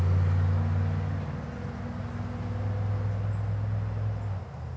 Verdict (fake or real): real